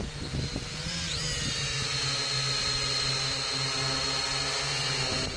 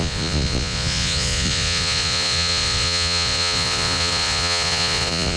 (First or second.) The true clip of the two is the first